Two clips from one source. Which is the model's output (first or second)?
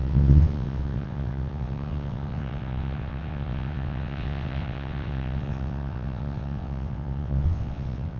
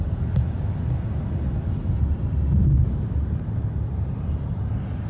first